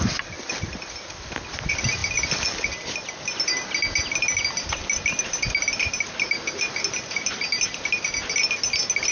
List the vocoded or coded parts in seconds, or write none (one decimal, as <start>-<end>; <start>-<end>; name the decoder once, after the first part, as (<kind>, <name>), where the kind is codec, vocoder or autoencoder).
none